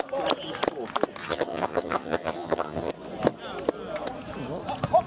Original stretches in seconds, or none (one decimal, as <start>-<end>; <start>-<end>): 0.0-1.2; 2.9-5.1